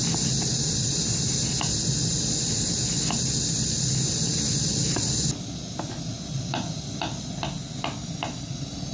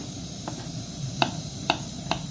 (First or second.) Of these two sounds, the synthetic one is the second